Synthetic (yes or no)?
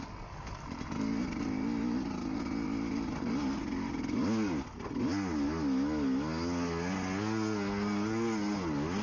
no